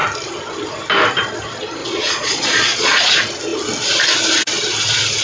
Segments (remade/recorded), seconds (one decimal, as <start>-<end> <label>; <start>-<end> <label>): 0.0-1.8 recorded; 1.8-3.1 remade; 3.1-5.2 recorded